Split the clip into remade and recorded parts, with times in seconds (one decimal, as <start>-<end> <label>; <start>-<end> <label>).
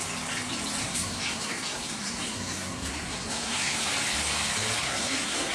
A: 0.0-0.8 recorded; 0.8-3.9 remade; 3.9-4.8 recorded; 4.8-5.5 remade